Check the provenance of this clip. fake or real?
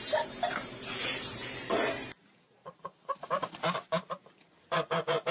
fake